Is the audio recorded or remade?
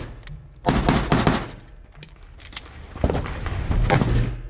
recorded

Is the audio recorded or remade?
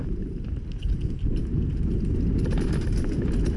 recorded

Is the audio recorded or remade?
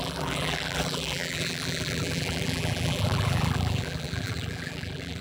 remade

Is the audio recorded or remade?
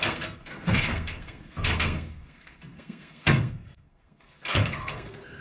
remade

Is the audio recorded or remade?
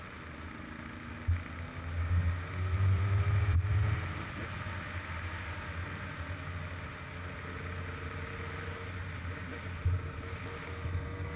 recorded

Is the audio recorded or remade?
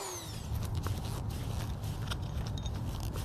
recorded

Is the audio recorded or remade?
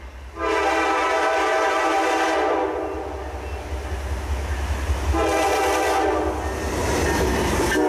recorded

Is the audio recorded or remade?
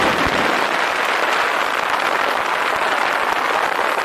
recorded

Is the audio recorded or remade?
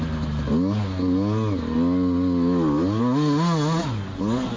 recorded